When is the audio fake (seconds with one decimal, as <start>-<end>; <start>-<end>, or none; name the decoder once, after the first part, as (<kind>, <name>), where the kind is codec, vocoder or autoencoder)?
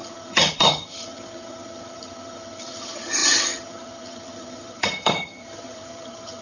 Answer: 0.0-6.4 (vocoder, HiFi-GAN)